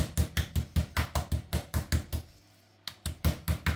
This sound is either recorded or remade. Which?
recorded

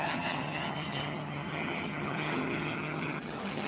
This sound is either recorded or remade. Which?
remade